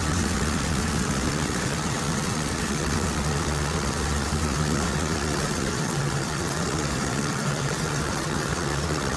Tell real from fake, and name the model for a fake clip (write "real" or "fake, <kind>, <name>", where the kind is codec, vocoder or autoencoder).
fake, vocoder, WaveNeXt